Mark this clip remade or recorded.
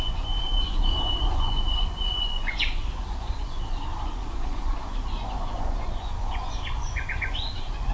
remade